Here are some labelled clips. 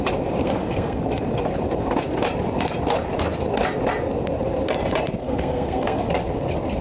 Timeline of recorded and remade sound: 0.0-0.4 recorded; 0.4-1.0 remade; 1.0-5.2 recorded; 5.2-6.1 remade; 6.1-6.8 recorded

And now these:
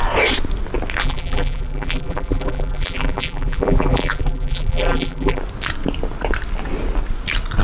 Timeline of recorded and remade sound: 0.0-1.0 recorded; 1.0-5.4 remade; 5.4-7.6 recorded

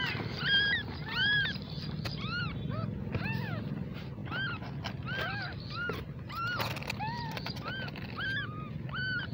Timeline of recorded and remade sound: 0.0-9.3 recorded

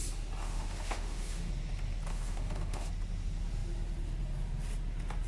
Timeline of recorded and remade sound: 0.0-0.4 recorded; 0.4-1.5 remade; 1.5-2.1 recorded; 2.1-2.9 remade; 2.9-5.3 recorded

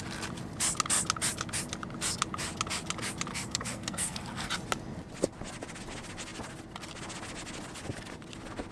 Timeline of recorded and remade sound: 0.0-3.3 recorded; 3.3-4.5 remade; 4.5-8.7 recorded

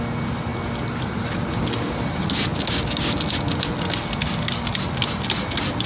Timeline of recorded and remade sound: 0.0-5.9 recorded

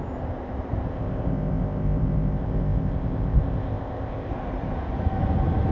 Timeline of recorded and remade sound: 0.0-0.9 recorded; 0.9-4.3 remade; 4.3-5.7 recorded

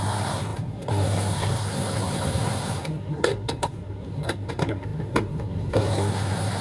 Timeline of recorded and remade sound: 0.0-6.6 remade